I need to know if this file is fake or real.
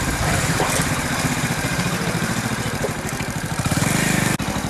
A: fake